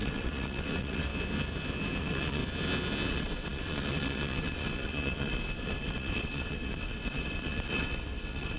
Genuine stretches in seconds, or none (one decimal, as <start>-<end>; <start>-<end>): 1.1-2.0; 2.4-3.1